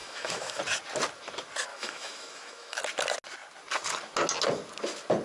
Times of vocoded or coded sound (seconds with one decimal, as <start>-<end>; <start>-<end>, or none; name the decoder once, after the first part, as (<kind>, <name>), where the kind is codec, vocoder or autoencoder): 0.0-0.6 (autoencoder, DAC-VAE); 1.7-2.8